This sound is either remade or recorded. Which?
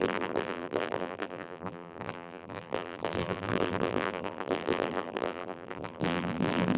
remade